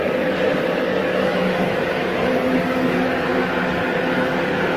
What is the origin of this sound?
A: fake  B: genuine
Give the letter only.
A